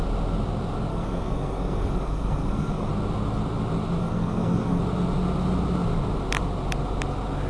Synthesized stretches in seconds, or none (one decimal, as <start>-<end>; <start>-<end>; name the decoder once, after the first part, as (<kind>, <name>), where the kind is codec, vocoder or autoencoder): 0.9-2.9 (codec, SNAC); 4.0-4.8